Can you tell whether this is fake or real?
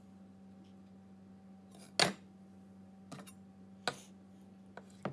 real